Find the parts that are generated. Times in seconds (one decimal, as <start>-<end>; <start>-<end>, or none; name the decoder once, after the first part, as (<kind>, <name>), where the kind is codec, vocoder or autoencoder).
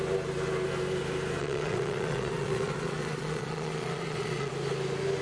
1.4-4.5 (vocoder, Vocos)